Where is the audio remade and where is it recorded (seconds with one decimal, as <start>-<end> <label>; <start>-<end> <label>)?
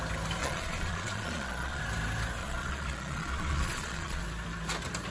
0.0-0.4 recorded; 0.4-1.8 remade; 1.8-2.4 recorded; 2.4-4.2 remade; 4.2-5.1 recorded